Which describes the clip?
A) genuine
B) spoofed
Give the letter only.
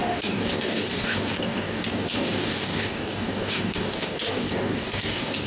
B